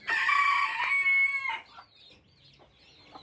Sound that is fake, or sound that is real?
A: real